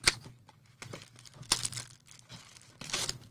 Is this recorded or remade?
recorded